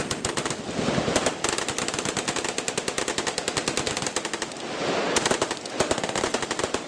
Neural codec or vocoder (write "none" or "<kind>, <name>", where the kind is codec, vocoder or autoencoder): none